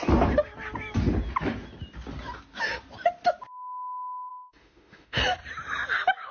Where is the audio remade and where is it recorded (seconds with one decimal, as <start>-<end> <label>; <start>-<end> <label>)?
0.0-4.3 recorded; 4.3-5.2 remade; 5.2-6.3 recorded